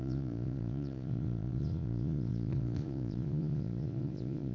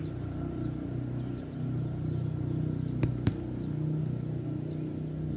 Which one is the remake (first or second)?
first